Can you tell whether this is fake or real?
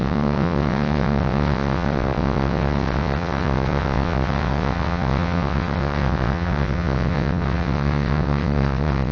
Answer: fake